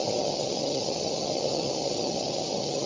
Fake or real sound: fake